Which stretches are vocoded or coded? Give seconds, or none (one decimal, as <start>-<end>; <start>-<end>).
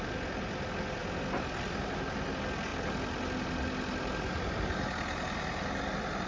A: none